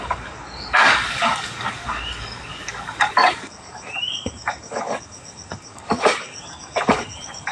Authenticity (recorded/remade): remade